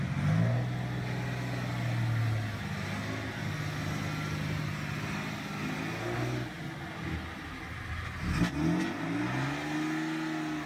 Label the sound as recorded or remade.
recorded